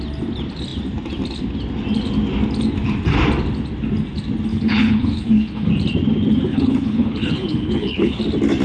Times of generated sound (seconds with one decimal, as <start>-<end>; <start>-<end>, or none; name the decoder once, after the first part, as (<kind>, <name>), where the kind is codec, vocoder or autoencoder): 4.5-5.7 (codec, HILCodec); 6.5-8.2